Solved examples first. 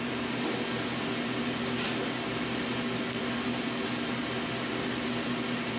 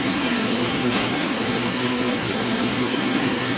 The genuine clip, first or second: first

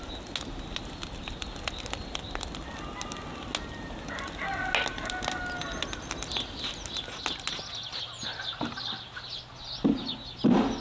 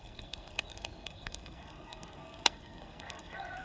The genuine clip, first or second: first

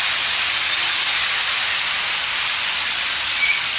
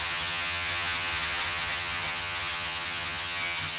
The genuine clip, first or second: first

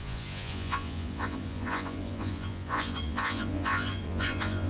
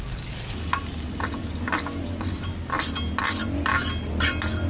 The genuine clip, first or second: second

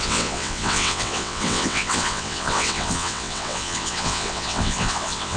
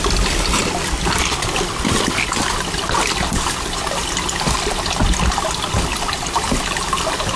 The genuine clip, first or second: second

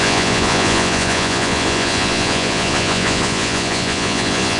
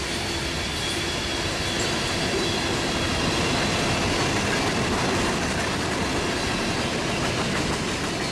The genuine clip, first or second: second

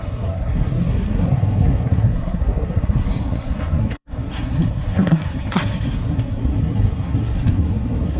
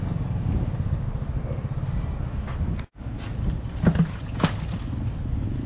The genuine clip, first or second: second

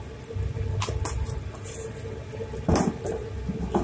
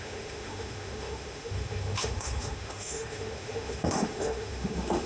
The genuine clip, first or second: first